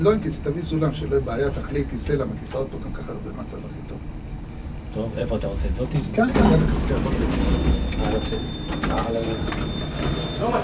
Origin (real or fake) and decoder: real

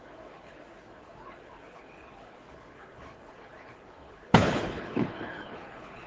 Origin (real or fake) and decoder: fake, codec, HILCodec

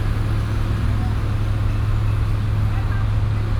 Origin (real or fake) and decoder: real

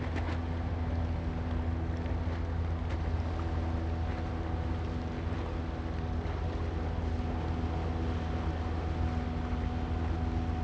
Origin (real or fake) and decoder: real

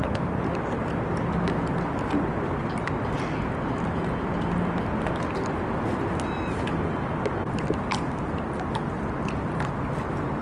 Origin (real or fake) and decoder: real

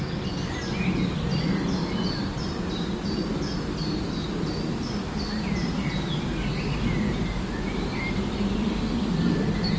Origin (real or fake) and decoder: real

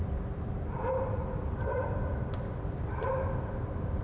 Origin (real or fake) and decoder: fake, vocoder, BigVGAN v2